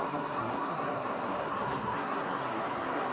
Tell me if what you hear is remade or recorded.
remade